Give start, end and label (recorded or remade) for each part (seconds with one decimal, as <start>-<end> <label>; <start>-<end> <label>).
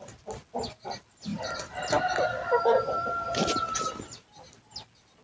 0.0-5.2 recorded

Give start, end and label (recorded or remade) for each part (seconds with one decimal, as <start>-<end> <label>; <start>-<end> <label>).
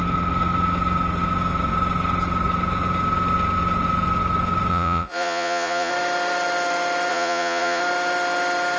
0.0-4.7 recorded; 4.7-5.9 remade; 5.9-7.1 recorded; 7.1-7.8 remade; 7.8-8.8 recorded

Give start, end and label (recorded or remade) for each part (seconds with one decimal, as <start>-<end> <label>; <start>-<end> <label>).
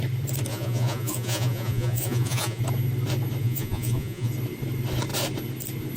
0.0-0.5 recorded; 0.5-2.6 remade; 2.6-3.4 recorded; 3.4-4.3 remade; 4.3-6.0 recorded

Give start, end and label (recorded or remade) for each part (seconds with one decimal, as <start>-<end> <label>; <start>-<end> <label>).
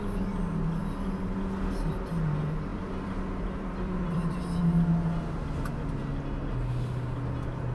0.0-2.7 recorded; 2.7-4.4 remade; 4.4-7.7 recorded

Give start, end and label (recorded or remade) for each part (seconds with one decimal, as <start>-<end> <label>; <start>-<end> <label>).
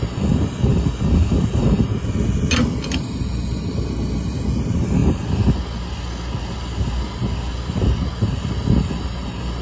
0.0-9.6 recorded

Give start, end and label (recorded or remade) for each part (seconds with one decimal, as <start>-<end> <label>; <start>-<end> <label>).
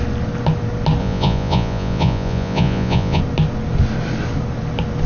0.0-1.0 recorded; 1.0-3.2 remade; 3.2-5.1 recorded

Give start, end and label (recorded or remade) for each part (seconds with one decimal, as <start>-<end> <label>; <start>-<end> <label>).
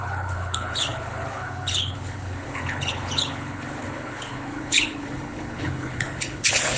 0.0-6.8 remade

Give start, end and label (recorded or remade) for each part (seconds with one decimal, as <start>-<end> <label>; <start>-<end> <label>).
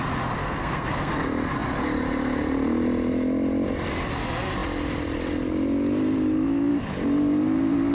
0.0-0.4 recorded; 0.4-1.1 remade; 1.1-7.9 recorded